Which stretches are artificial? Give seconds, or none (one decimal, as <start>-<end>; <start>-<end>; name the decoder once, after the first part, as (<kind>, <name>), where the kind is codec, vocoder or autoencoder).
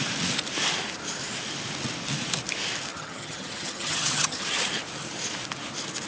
2.9-4.7 (vocoder, HiFi-GAN)